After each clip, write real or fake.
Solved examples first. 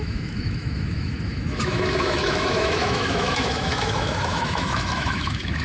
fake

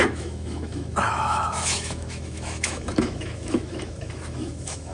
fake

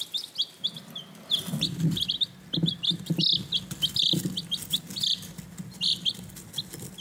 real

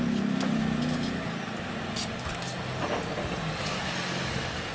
real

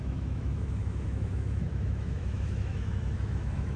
fake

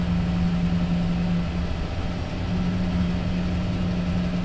real